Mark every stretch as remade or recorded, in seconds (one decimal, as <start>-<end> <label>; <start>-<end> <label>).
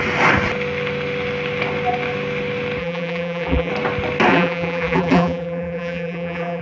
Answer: 0.0-2.8 recorded; 2.8-3.7 remade; 3.7-4.3 recorded; 4.3-6.6 remade